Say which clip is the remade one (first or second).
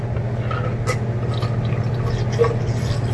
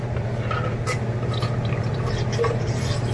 second